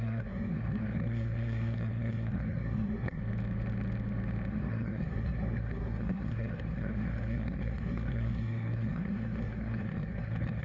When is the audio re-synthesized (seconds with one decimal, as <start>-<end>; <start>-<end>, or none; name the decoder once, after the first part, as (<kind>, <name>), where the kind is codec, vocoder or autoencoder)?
0.0-3.2 (codec, SNAC); 4.5-10.6